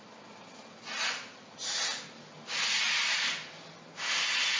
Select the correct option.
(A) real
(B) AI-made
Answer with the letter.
A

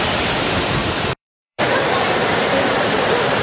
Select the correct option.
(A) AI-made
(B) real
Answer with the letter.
A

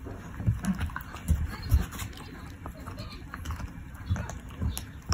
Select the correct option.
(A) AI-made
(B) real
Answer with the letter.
B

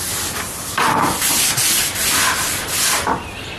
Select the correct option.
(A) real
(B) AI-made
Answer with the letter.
B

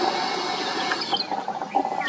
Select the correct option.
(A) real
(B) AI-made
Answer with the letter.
A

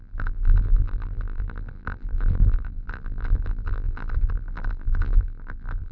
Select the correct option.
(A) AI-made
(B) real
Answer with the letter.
A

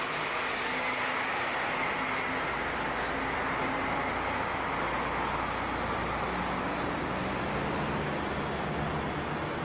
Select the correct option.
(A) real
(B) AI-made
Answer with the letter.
A